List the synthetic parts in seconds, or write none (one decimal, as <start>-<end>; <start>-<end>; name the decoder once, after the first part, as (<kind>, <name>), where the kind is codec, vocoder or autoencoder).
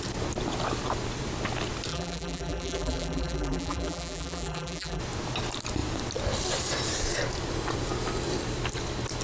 1.9-5.0 (vocoder, BigVGAN v2)